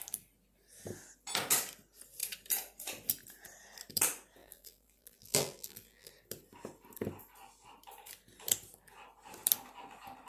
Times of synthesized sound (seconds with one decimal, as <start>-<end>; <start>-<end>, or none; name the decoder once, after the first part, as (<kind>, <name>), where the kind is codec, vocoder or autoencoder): 4.4-6.1 (vocoder, BigVGAN v2)